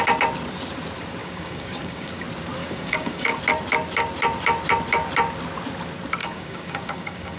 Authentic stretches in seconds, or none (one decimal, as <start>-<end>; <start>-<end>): 0.0-1.2; 2.2-2.6; 3.4-6.2